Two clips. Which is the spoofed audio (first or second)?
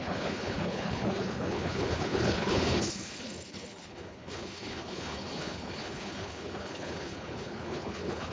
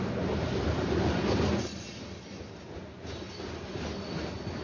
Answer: first